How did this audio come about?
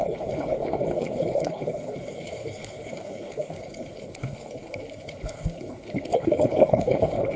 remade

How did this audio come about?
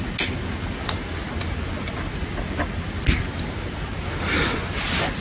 recorded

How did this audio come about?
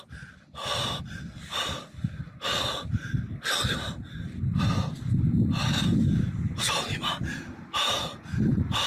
recorded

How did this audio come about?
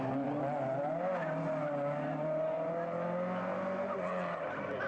recorded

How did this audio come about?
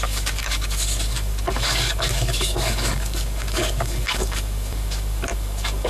remade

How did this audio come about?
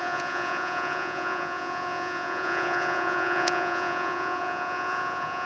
remade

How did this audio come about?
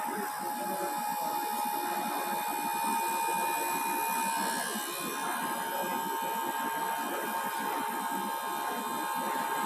recorded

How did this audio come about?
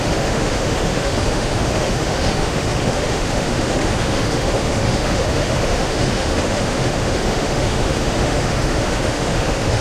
remade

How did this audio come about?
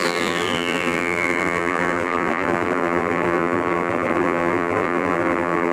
remade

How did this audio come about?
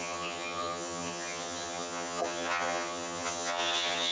remade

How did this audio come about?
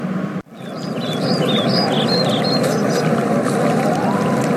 recorded